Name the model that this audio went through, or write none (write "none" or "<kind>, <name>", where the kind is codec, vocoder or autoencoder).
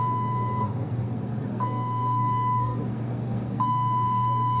codec, SNAC